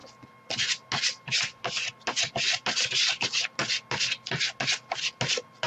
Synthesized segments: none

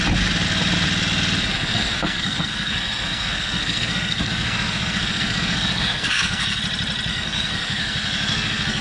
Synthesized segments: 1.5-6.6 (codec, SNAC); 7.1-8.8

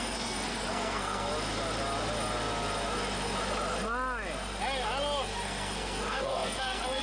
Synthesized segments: 0.0-1.3 (codec, SNAC); 5.2-7.0

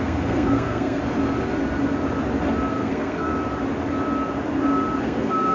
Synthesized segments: 0.0-1.0 (codec, SNAC); 2.7-3.3; 5.0-5.5